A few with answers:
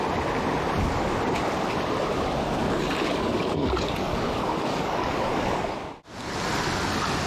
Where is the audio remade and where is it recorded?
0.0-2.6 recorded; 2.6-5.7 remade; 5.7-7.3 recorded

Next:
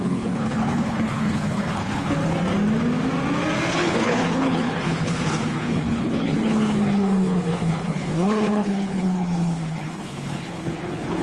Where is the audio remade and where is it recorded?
0.0-2.3 remade; 2.3-3.7 recorded; 3.7-11.2 remade

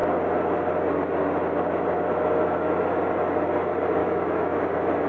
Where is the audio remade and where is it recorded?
0.0-4.0 recorded; 4.0-4.6 remade; 4.6-5.1 recorded